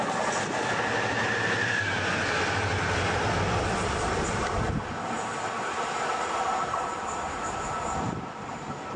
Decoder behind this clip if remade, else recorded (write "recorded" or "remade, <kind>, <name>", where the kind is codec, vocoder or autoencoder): recorded